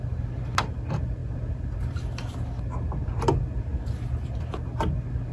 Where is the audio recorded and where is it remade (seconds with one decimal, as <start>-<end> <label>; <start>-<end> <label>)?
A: 0.0-5.3 recorded